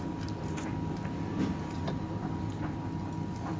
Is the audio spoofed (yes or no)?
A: no